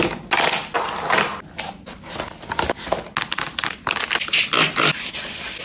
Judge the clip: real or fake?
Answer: real